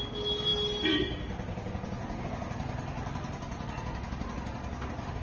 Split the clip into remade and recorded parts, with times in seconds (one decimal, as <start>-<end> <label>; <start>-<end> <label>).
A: 0.0-5.2 recorded